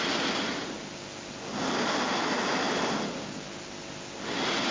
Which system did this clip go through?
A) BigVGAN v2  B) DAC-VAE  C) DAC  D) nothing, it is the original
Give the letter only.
D